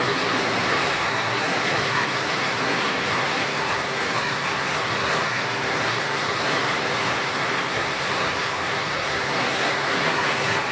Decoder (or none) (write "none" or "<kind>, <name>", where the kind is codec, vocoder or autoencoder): codec, SNAC